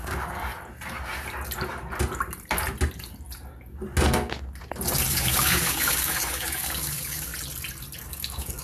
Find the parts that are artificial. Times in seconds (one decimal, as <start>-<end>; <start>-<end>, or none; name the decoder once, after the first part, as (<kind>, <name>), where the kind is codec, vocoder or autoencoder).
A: 0.0-0.5 (codec, DAC); 5.1-7.3; 8.0-8.6